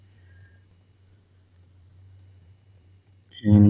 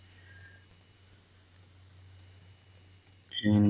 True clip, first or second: second